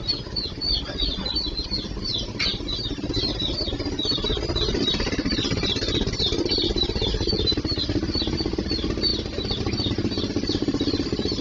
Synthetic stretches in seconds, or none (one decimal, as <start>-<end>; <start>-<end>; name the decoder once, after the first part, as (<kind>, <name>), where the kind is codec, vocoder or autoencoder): none